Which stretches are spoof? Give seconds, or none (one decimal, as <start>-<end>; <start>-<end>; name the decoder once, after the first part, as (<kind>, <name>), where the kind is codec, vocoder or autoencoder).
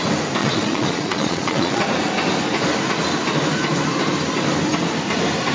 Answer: 0.4-1.8 (vocoder, Vocos)